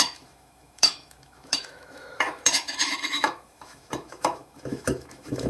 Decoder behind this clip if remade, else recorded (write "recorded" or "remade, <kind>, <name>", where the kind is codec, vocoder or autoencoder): remade, autoencoder, DAC-VAE